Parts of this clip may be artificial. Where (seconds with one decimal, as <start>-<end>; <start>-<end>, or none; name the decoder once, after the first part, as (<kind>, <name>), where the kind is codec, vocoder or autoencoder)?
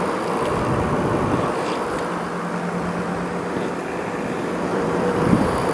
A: 4.7-5.7 (vocoder, BigVGAN v2)